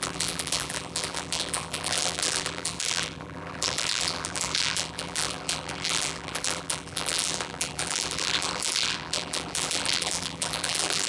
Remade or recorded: remade